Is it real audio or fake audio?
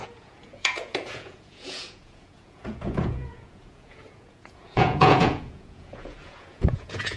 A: fake